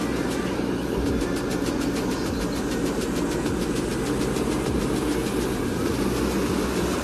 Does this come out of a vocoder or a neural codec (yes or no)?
no